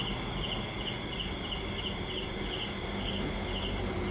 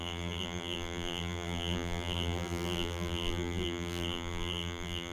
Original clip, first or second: first